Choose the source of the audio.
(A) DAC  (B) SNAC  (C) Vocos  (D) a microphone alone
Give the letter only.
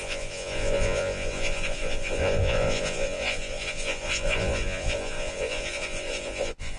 C